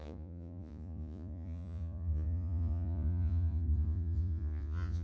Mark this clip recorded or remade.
remade